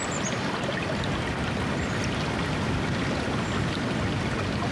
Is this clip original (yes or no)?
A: yes